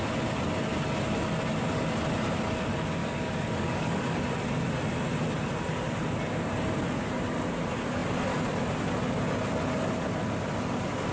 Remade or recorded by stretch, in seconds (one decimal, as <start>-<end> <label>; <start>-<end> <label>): 0.0-3.0 recorded; 3.0-4.2 remade; 4.2-11.1 recorded